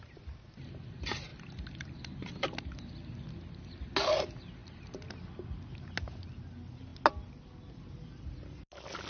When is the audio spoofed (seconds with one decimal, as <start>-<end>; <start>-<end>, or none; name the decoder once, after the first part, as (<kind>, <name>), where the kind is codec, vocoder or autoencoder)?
none